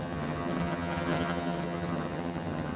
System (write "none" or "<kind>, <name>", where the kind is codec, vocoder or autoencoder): vocoder, HiFi-GAN